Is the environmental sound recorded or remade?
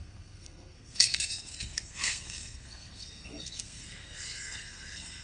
remade